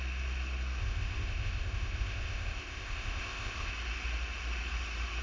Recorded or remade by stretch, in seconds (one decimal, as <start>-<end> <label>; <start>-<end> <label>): 0.0-0.8 recorded; 0.8-3.7 remade; 3.7-5.2 recorded